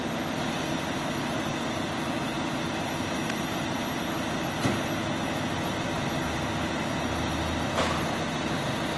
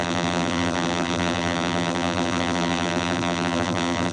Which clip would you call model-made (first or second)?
second